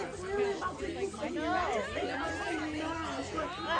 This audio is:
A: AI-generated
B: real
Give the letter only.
B